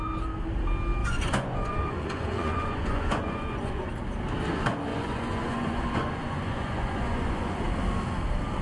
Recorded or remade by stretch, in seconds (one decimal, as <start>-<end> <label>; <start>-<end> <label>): 0.0-1.0 recorded; 1.0-3.9 remade; 3.9-4.9 recorded; 4.9-7.6 remade; 7.6-8.6 recorded